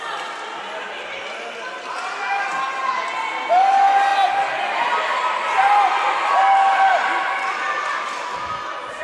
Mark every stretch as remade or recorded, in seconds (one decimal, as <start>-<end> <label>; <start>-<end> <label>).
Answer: 0.0-9.0 recorded

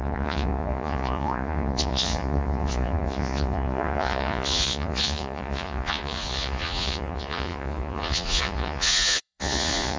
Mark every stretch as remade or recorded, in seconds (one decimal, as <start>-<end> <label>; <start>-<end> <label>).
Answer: 0.0-10.0 remade

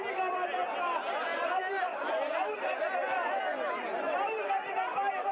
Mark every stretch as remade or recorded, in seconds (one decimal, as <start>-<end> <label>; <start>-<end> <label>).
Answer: 0.0-5.3 recorded

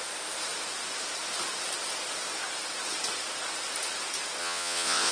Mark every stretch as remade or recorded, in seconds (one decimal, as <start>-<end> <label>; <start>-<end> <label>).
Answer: 0.0-4.4 recorded; 4.4-5.1 remade